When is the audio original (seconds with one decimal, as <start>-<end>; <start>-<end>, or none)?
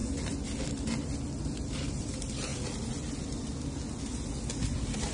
0.0-1.9; 2.5-5.1